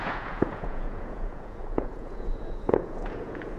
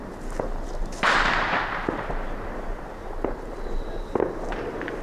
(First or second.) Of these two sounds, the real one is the second